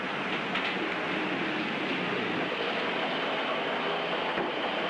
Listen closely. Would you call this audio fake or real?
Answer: real